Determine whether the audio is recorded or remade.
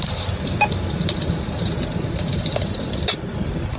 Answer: recorded